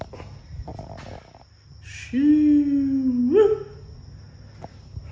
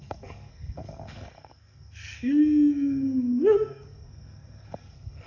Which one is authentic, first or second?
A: first